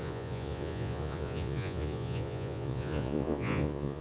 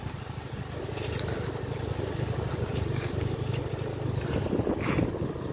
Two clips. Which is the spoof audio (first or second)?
first